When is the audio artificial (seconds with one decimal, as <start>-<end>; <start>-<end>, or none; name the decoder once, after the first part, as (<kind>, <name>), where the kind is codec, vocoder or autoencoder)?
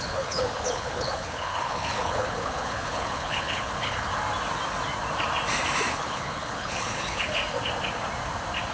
0.0-4.1 (codec, HILCodec); 5.9-7.4